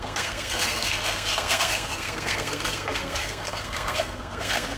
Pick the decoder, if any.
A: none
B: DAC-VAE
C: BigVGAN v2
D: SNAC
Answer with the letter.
D